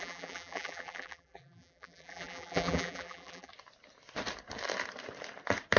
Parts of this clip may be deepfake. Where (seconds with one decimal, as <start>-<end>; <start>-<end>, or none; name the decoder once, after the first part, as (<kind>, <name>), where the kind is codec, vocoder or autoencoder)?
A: 0.0-3.5 (vocoder, BigVGAN v2)